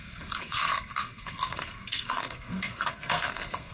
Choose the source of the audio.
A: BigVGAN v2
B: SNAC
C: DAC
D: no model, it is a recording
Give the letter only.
B